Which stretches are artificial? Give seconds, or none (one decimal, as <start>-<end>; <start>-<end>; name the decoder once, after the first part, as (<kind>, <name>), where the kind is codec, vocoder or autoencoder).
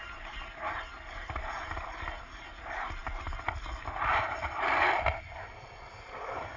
none